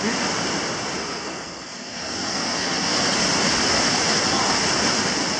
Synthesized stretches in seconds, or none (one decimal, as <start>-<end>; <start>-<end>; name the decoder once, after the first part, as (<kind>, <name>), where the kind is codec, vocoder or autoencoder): 1.0-3.2 (codec, SNAC)